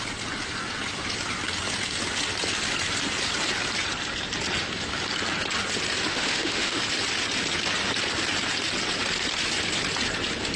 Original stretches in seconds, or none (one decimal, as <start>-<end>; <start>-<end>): 0.0-6.1; 6.8-10.6